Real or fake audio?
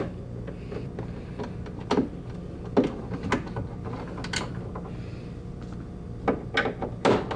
real